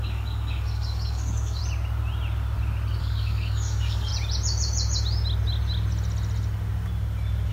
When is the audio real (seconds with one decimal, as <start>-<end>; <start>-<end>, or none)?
1.6-3.0; 4.1-7.5